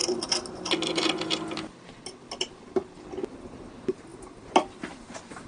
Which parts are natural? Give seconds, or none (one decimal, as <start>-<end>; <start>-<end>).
0.0-5.5